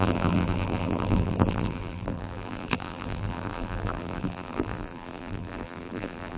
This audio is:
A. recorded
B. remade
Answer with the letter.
B